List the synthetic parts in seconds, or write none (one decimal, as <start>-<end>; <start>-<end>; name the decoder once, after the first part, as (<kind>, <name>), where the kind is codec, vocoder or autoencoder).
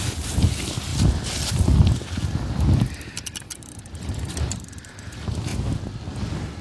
none